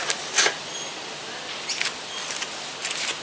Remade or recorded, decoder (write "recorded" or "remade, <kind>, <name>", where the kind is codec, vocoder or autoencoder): recorded